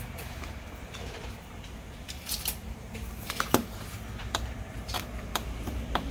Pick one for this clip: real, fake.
fake